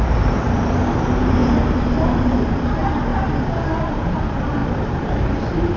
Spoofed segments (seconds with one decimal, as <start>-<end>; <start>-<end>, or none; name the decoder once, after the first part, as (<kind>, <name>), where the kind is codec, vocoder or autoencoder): 0.0-3.1 (vocoder, BigVGAN v2); 3.9-5.8